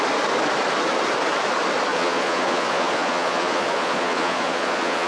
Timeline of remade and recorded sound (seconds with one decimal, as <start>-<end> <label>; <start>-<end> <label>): 0.0-1.9 recorded; 1.9-5.1 remade